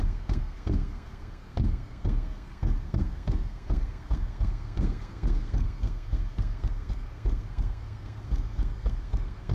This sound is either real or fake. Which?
fake